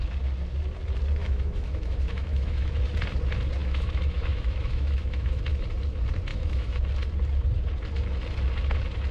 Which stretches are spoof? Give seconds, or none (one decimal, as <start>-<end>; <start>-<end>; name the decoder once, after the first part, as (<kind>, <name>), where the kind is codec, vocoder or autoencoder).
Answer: 1.2-2.7 (autoencoder, DAC-VAE); 3.6-5.4; 6.3-6.8